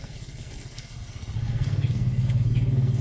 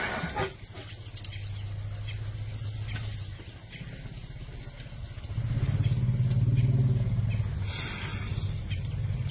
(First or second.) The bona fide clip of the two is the second